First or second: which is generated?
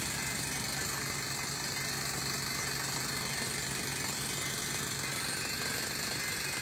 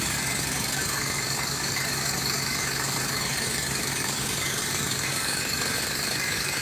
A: second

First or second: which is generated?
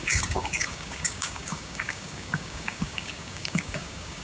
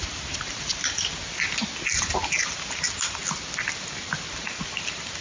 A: first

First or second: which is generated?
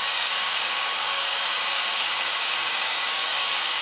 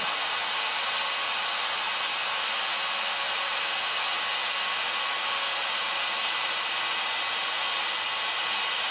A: first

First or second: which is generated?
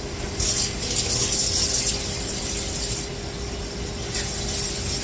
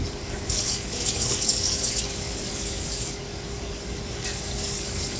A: second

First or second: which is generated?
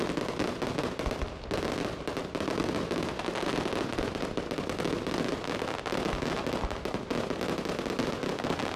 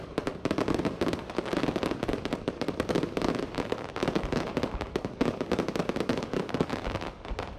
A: second